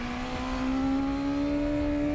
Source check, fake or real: real